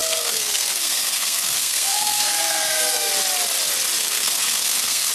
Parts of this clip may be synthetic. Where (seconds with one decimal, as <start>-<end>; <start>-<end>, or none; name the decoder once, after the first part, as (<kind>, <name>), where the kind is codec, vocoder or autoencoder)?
0.0-3.1 (codec, SNAC); 4.0-5.1